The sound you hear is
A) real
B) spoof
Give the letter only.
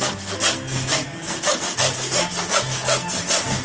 B